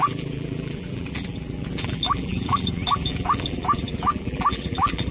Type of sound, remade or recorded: remade